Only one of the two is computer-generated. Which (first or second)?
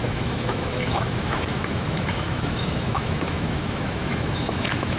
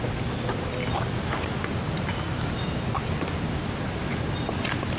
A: first